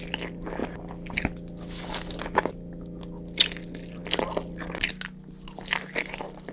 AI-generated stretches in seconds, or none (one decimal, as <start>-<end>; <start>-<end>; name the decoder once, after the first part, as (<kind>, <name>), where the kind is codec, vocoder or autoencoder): none

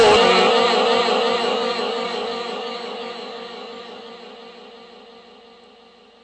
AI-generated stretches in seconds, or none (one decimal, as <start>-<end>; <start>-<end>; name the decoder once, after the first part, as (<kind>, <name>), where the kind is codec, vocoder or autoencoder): 1.4-4.1 (codec, DAC)

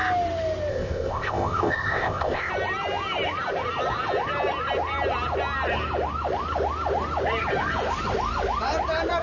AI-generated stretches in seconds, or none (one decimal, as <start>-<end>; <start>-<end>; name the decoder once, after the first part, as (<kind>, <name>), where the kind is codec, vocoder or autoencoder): 0.7-2.5 (codec, ZipCodec)

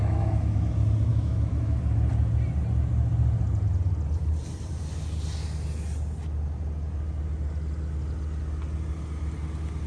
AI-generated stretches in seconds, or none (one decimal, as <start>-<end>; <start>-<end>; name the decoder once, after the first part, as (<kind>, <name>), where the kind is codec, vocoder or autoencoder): 0.0-0.7 (autoencoder, DAC-VAE); 1.1-1.8

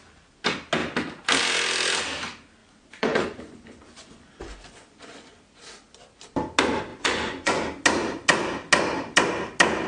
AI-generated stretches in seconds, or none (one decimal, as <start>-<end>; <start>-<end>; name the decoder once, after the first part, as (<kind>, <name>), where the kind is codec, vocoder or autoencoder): 2.6-5.3 (vocoder, Vocos); 6.9-7.6

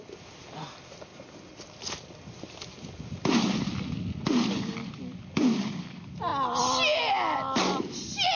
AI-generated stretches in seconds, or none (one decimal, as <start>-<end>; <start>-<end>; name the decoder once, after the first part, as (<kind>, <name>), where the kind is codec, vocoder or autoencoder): 0.0-1.1 (vocoder, BigVGAN v2); 2.3-6.3

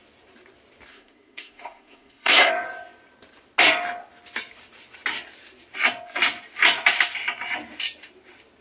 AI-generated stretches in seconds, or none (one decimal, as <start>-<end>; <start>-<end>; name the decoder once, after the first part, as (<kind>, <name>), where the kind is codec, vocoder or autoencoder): 0.9-2.5 (codec, SNAC)